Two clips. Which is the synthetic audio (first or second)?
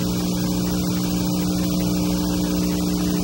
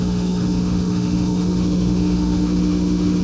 second